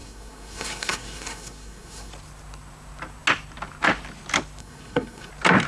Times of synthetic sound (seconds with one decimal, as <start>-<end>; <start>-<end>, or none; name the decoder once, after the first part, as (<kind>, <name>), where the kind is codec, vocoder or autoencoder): 0.0-2.1 (codec, SNAC); 4.6-5.3